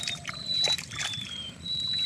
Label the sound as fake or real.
fake